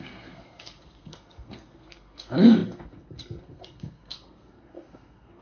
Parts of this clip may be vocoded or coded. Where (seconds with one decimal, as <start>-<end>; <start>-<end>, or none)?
0.0-5.4